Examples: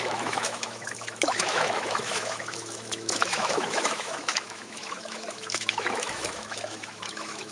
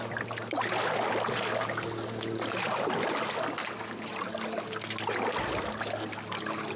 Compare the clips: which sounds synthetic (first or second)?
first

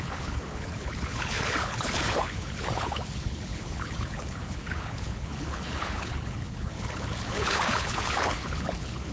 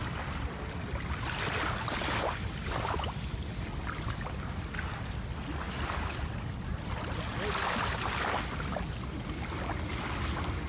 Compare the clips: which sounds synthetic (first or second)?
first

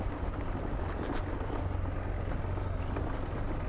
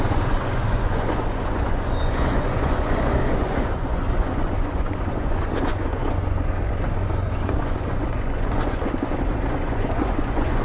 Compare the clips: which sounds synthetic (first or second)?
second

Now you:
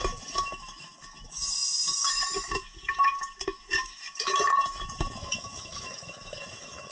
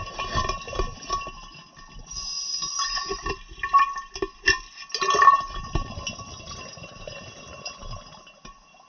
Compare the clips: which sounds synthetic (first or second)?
first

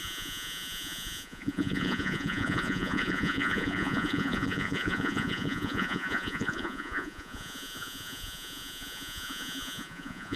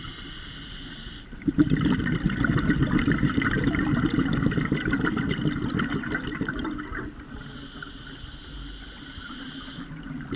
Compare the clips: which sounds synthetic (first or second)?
first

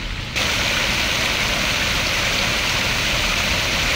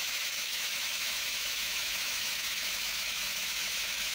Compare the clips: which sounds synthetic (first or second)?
second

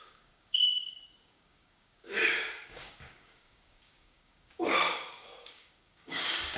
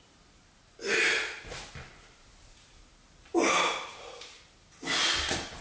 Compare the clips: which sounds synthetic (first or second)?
first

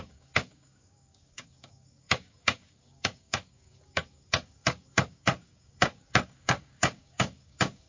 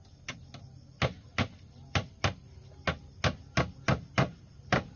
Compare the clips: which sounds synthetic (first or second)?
first